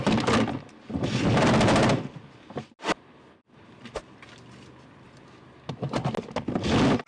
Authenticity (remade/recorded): recorded